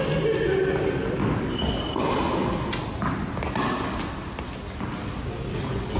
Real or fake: real